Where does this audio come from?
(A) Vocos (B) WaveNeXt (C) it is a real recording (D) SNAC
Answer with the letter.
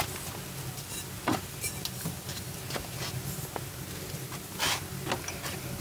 C